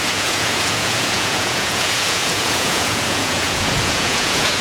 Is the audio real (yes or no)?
no